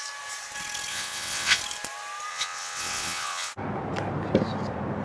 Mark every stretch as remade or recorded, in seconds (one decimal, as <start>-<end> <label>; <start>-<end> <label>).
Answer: 0.0-0.9 recorded; 0.9-1.6 remade; 1.6-2.3 recorded; 2.3-3.5 remade; 3.5-5.0 recorded